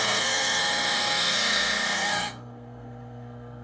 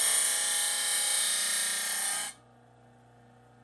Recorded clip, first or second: second